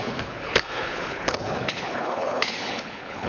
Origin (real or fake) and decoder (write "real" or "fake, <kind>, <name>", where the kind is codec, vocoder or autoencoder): fake, codec, HILCodec